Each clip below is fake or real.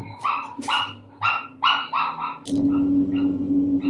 real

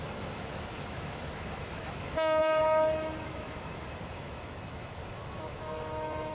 fake